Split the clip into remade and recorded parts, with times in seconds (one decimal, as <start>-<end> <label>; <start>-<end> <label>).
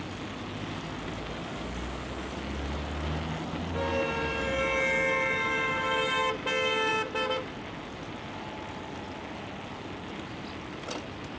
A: 0.0-11.4 recorded